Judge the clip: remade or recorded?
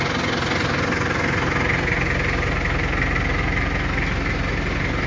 recorded